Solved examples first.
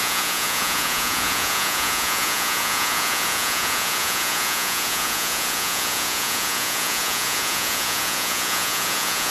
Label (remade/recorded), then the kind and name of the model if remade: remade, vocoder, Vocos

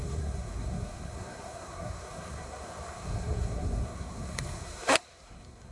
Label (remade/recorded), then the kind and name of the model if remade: remade, codec, SNAC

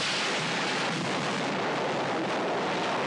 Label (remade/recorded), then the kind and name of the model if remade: recorded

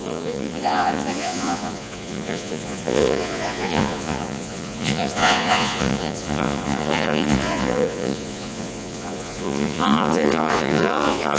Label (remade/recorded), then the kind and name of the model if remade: remade, vocoder, Vocos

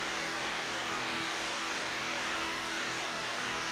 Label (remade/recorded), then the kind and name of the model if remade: remade, codec, DAC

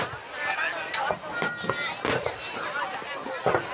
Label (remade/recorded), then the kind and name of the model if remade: recorded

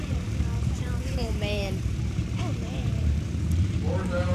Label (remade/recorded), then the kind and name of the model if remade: remade, vocoder, BigVGAN v2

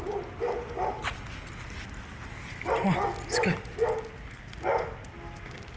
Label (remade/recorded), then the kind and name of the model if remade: recorded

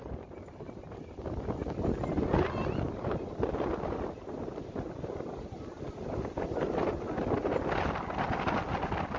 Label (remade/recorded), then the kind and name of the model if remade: recorded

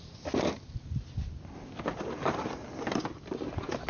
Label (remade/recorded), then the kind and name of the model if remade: recorded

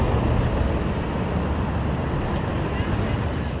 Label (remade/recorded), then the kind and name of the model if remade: recorded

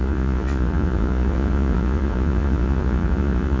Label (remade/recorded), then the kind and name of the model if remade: remade, vocoder, Vocos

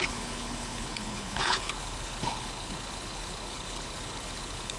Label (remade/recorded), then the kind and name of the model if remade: remade, codec, HILCodec